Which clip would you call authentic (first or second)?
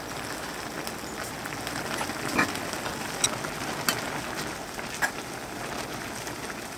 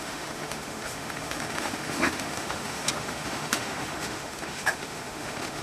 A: first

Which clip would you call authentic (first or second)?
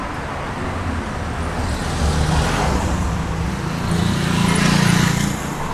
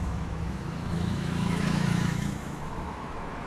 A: first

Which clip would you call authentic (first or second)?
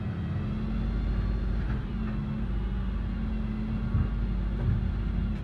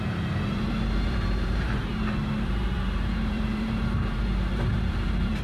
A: first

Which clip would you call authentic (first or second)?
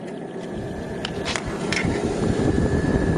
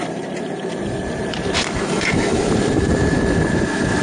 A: first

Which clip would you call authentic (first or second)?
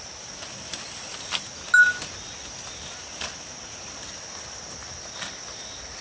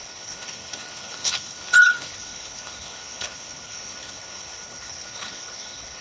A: first